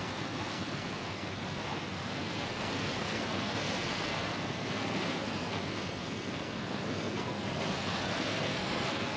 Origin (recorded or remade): remade